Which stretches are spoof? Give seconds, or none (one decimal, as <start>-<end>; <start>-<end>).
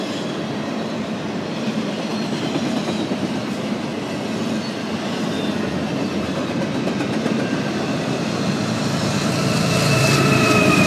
0.0-2.1; 2.6-3.9; 5.7-10.9